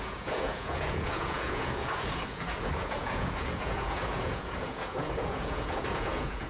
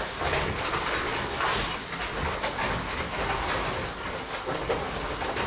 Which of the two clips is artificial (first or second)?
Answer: first